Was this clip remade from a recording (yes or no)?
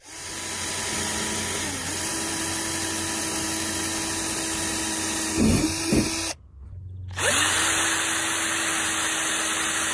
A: no